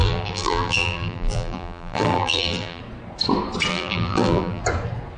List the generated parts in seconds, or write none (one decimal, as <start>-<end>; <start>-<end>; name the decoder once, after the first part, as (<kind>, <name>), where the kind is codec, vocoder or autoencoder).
0.0-2.8 (vocoder, BigVGAN v2); 3.7-4.6